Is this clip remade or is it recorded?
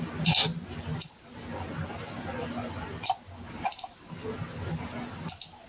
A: recorded